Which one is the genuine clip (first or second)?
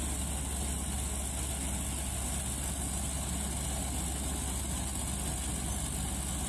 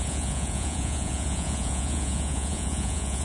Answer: first